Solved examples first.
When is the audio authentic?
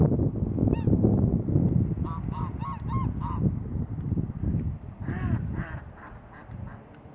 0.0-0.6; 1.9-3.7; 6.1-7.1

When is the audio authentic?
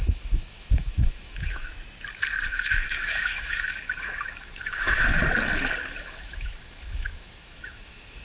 1.7-2.5; 5.2-5.9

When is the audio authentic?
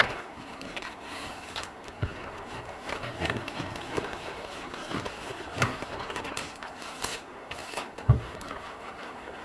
none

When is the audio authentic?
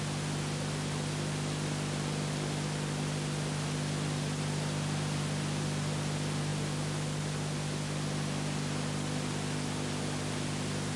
0.0-11.0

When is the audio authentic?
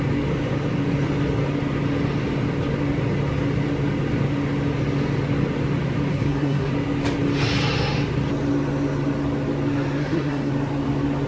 0.0-6.1; 6.7-10.0; 10.5-11.3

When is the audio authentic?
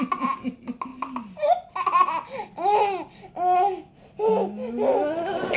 0.0-5.6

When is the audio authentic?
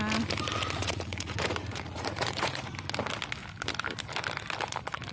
0.0-0.8; 2.7-5.1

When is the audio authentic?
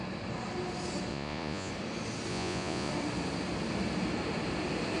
0.0-1.1; 1.7-2.3; 2.9-5.0